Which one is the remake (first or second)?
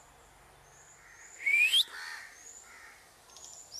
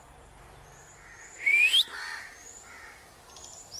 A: second